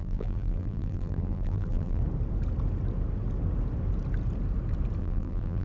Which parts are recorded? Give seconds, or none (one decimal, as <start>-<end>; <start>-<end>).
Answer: 2.0-5.0